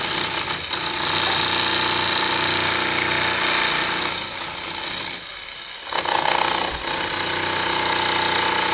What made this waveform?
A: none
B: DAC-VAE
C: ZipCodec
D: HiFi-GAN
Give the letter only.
A